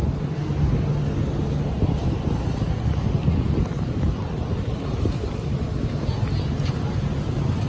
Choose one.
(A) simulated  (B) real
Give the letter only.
B